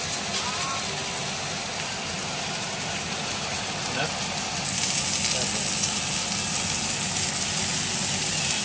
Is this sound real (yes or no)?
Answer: yes